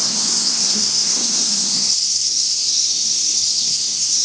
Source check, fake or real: fake